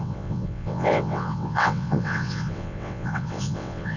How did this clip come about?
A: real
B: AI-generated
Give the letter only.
B